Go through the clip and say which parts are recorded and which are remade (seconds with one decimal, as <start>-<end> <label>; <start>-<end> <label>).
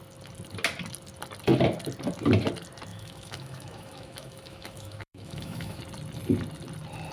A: 0.0-2.9 recorded; 2.9-5.8 remade; 5.8-7.1 recorded